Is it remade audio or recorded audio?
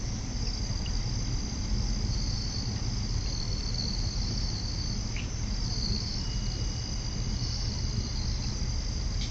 recorded